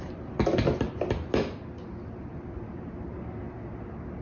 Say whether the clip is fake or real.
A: real